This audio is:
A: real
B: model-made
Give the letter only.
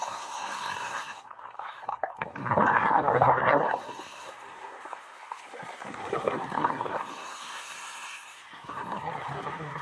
B